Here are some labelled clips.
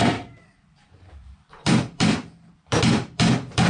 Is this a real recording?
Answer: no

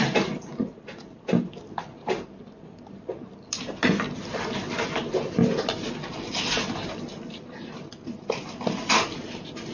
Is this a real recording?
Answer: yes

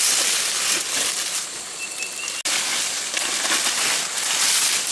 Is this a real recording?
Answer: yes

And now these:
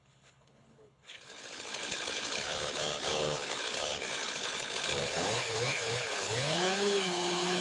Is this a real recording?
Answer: no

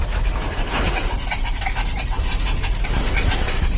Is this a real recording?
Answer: yes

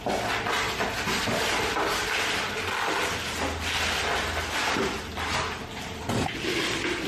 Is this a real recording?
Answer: yes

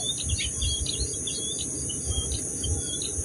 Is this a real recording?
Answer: yes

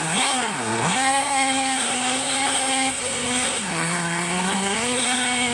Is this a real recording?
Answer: no